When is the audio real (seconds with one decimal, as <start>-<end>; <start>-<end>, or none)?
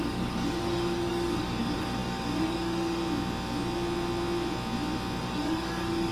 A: 3.0-5.2